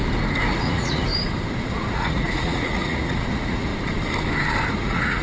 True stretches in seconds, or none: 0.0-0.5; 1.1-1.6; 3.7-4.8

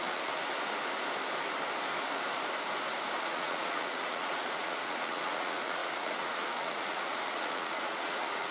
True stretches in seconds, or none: 0.4-3.2

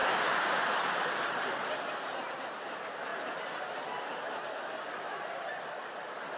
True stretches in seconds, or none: 0.0-6.4

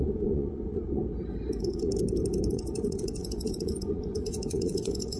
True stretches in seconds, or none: 1.0-1.5; 1.9-2.5

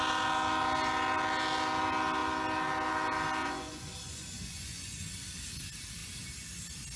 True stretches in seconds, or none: 0.0-3.4; 5.1-7.0

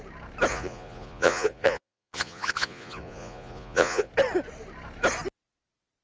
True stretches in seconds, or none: 0.0-0.5; 4.1-6.0